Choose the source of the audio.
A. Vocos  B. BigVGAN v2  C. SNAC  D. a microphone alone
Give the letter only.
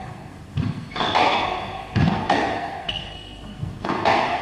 C